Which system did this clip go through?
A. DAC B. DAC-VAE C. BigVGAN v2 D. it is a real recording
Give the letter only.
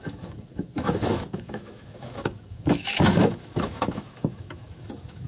B